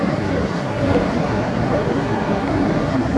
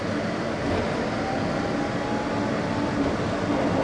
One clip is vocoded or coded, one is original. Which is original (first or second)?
second